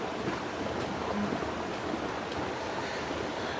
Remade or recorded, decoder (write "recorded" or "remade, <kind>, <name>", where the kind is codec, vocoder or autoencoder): recorded